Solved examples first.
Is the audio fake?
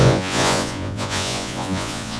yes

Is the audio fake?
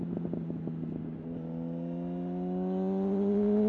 no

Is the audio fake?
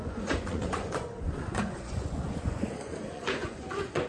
yes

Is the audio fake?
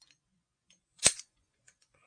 yes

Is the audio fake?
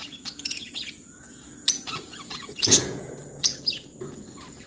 yes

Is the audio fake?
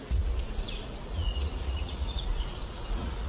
yes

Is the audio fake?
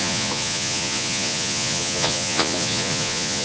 yes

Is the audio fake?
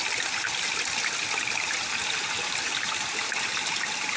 no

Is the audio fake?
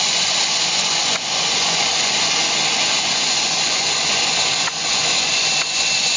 yes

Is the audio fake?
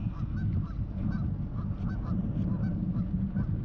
no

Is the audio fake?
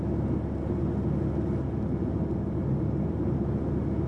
no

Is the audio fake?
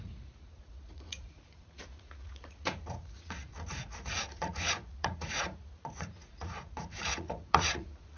yes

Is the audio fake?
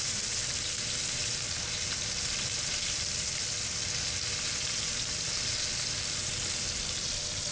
no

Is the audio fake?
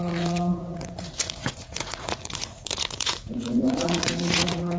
yes